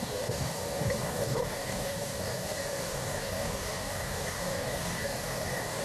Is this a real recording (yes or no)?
no